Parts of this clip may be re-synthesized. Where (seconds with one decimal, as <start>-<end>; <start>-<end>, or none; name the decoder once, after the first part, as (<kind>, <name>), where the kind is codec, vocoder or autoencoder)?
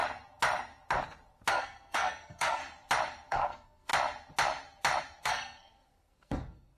1.5-2.6 (codec, SNAC); 3.3-3.9; 5.2-6.8